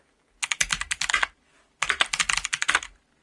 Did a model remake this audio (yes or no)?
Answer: no